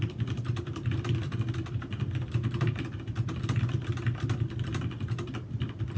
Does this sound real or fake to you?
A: real